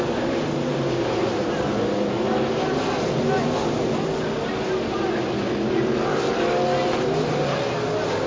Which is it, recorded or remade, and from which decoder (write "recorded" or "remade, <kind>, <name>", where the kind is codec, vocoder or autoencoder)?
recorded